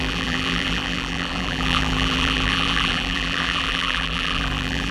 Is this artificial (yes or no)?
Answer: yes